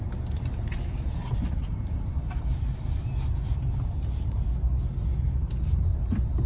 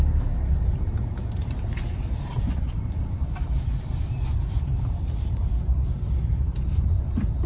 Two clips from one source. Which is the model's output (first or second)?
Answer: second